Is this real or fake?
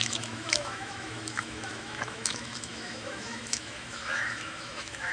fake